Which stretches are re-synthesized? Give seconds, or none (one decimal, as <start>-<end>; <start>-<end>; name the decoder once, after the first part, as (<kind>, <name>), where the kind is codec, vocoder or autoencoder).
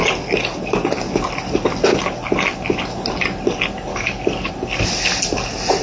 3.9-4.5 (codec, DAC)